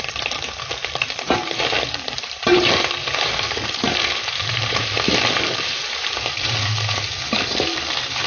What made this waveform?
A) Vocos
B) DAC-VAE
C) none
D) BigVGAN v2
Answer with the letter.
D